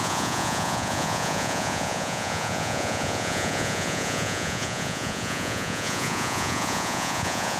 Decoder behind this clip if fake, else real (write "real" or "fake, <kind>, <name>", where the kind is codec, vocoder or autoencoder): fake, vocoder, Vocos